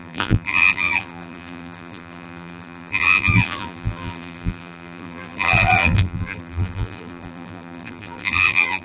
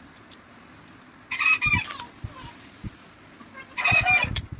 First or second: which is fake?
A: first